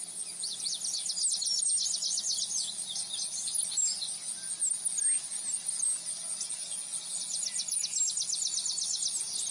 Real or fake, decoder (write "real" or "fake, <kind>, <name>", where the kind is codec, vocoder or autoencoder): real